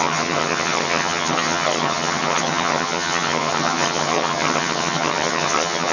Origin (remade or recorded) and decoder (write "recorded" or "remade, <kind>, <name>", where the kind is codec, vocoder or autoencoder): remade, vocoder, HiFi-GAN